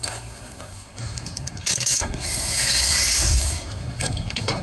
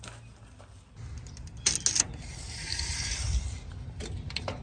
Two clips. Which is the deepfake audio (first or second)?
first